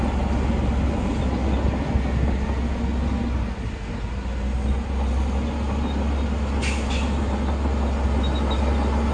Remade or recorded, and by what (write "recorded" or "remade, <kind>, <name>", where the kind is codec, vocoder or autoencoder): recorded